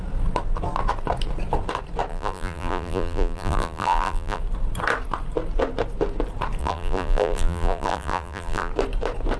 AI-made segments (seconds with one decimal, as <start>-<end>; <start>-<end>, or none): 2.1-4.4; 6.6-8.7

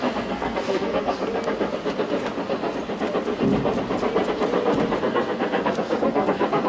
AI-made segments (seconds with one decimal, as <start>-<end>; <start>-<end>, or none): 0.0-1.2; 5.0-6.7

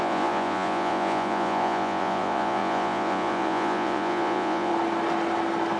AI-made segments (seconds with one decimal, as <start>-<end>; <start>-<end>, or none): 0.0-4.7

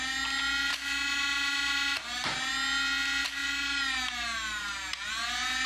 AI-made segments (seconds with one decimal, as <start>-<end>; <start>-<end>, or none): none

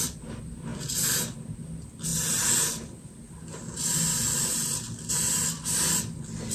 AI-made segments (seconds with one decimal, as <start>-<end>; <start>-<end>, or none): none

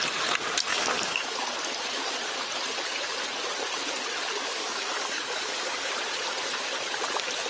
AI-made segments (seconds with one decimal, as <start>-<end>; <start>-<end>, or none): 0.7-1.4; 4.5-5.9